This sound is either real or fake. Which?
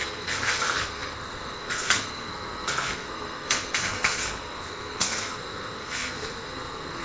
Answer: fake